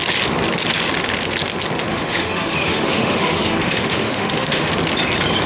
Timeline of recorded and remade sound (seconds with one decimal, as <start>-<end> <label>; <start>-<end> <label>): 0.0-1.9 recorded; 1.9-4.7 remade; 4.7-5.5 recorded